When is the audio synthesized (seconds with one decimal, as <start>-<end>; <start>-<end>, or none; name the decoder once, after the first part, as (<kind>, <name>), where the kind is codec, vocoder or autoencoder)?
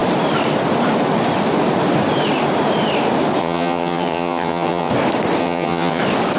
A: 3.4-4.9 (vocoder, HiFi-GAN); 5.4-6.0